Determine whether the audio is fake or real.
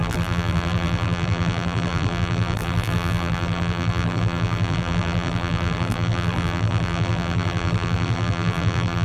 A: fake